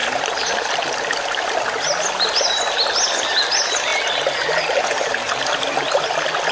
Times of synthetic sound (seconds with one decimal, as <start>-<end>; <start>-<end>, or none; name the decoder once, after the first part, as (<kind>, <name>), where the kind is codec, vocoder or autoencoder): none